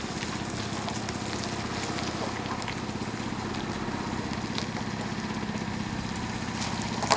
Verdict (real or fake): real